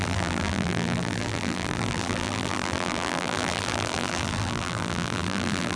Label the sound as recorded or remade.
remade